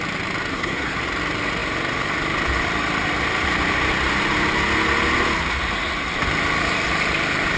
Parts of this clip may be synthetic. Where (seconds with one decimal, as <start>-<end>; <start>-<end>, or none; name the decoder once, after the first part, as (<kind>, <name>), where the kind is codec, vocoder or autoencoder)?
0.5-1.0 (codec, SNAC)